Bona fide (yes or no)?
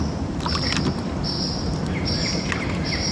yes